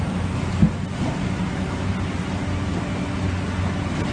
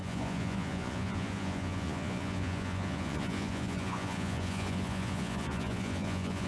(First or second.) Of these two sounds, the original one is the first